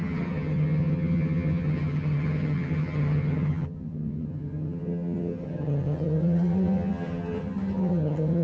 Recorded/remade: remade